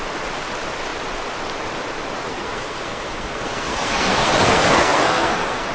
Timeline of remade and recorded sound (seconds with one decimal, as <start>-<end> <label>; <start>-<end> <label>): 0.0-2.3 recorded; 2.3-5.7 remade